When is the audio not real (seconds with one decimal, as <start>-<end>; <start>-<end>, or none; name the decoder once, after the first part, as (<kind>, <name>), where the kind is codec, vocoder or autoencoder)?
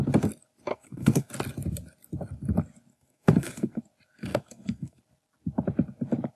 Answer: 0.7-1.3 (codec, SNAC); 2.9-3.8; 4.3-5.0